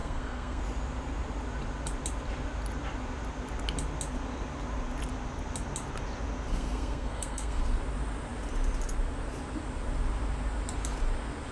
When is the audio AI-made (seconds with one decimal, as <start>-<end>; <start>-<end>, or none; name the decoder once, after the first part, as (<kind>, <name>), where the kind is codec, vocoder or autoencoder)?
0.0-0.6 (codec, SNAC); 6.5-7.6